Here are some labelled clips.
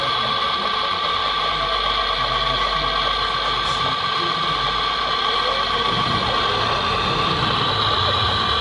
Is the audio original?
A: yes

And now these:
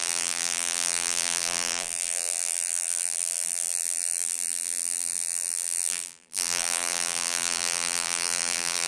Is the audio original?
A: no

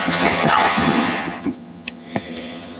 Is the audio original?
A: no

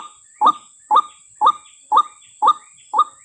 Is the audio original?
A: yes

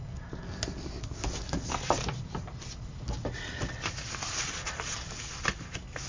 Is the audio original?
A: yes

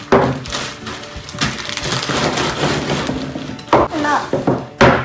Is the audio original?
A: yes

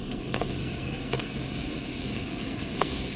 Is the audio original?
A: no